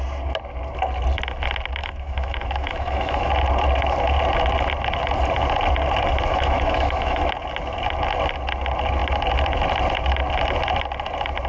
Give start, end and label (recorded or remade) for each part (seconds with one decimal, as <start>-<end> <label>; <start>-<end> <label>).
0.0-1.8 recorded; 1.8-3.3 remade; 3.3-6.3 recorded; 6.3-7.2 remade; 7.2-11.5 recorded